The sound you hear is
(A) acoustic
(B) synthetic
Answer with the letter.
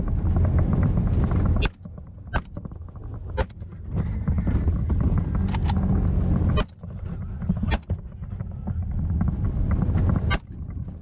A